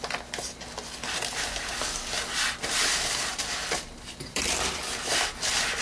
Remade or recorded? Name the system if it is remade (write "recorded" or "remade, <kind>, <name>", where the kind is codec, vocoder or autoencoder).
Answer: recorded